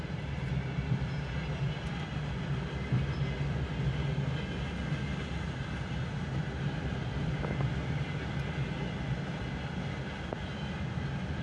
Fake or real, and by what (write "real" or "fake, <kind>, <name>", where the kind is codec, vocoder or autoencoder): real